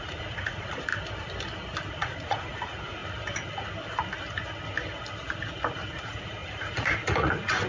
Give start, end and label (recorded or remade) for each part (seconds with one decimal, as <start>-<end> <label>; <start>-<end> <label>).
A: 0.0-0.9 remade; 0.9-1.9 recorded; 1.9-3.0 remade; 3.0-6.0 recorded; 6.0-7.7 remade